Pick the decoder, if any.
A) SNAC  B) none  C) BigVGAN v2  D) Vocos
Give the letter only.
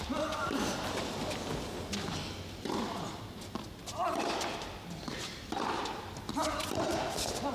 B